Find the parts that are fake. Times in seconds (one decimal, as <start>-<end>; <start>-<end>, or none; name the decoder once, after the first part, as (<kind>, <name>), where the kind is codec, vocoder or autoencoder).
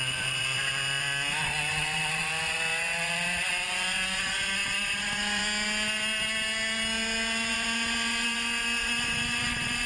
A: 0.0-5.4 (vocoder, Vocos); 7.5-9.9